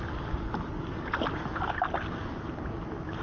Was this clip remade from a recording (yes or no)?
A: no